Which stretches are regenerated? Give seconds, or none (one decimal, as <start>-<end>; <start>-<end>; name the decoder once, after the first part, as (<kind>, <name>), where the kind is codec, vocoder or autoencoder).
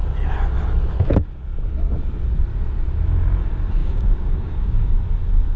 3.8-5.0 (codec, DAC)